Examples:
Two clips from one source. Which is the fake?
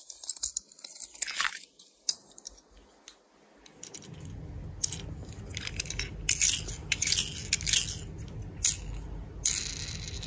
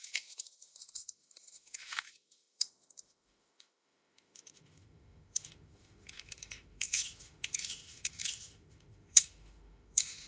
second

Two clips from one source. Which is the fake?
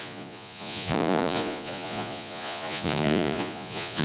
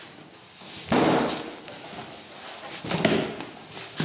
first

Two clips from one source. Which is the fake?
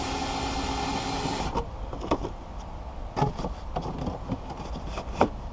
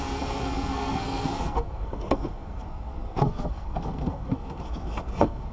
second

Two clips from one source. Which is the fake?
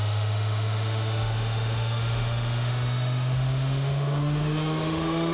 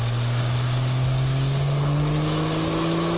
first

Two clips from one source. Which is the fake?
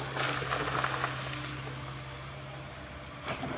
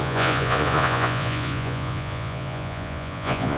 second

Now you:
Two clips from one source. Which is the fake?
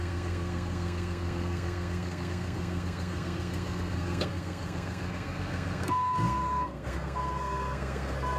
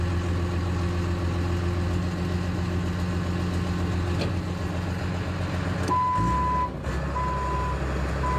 first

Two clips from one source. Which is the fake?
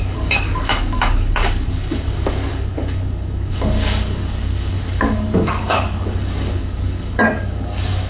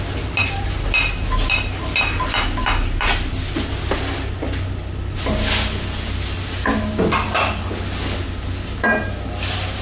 first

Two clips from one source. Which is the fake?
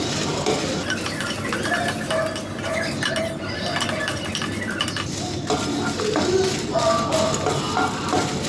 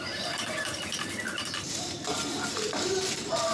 second